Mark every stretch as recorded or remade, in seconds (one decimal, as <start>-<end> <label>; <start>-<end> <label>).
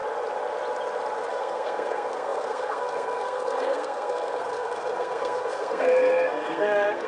0.0-1.3 recorded; 1.3-7.1 remade